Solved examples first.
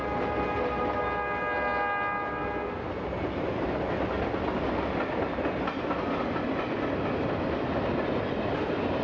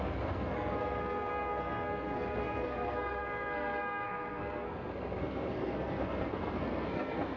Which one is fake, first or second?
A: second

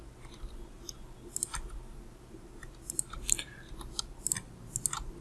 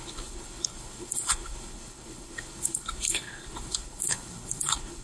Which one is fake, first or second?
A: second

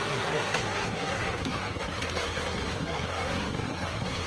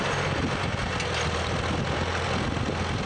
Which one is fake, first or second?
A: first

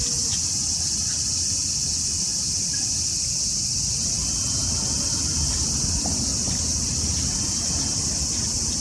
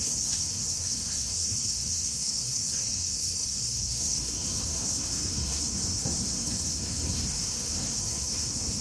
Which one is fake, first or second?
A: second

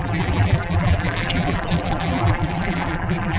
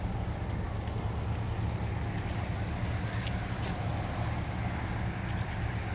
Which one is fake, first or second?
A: first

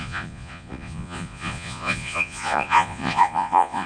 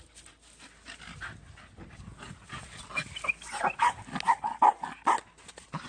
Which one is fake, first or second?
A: first